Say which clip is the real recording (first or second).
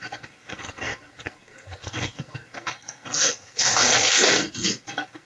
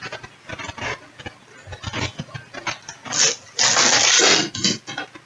second